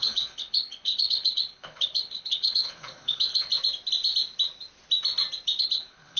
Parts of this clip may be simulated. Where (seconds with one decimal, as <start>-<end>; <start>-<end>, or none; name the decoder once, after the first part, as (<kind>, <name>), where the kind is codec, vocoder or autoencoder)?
0.0-3.5 (codec, HILCodec); 5.6-6.2